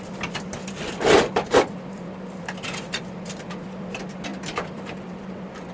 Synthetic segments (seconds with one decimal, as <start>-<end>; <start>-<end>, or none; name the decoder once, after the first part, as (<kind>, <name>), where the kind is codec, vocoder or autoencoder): none